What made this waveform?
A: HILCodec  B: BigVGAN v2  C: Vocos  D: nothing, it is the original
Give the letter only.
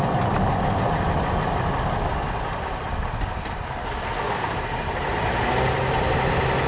D